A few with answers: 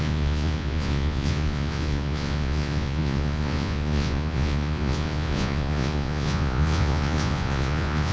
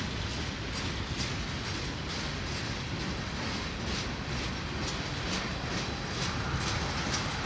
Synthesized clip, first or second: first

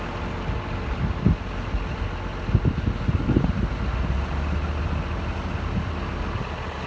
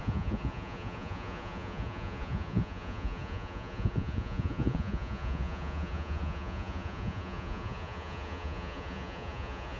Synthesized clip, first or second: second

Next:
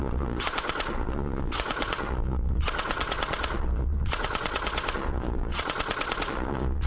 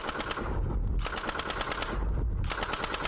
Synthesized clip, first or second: first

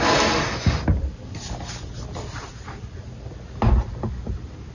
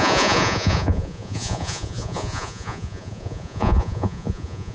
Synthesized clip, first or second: second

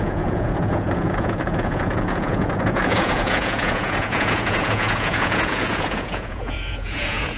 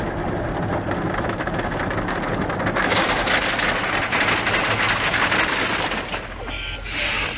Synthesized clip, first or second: first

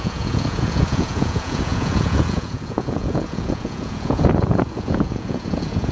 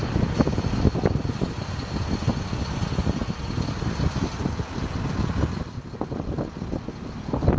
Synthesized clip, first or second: first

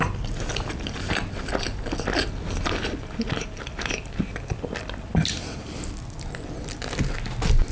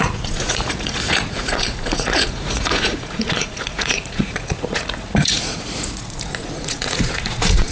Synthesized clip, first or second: second